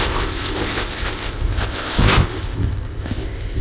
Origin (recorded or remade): remade